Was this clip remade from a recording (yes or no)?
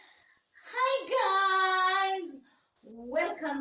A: no